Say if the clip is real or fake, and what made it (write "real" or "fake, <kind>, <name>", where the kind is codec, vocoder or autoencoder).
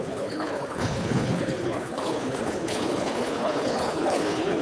fake, codec, HILCodec